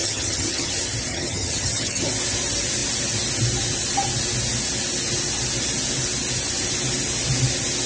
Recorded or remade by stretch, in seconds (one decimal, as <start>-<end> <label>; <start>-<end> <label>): 0.0-0.7 remade; 0.7-1.1 recorded; 1.1-2.1 remade; 2.1-7.9 recorded